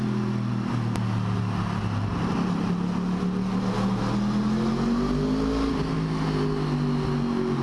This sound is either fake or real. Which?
real